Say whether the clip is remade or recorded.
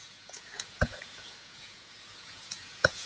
remade